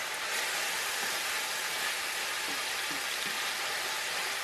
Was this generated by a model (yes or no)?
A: no